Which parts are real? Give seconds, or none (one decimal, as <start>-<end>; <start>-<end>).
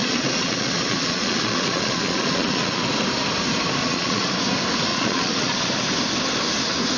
2.8-3.8; 4.3-4.9; 5.7-7.0